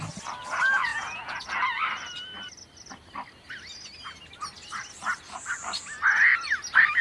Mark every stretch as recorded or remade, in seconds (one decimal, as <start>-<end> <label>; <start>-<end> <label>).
0.0-0.9 recorded; 0.9-1.5 remade; 1.5-7.0 recorded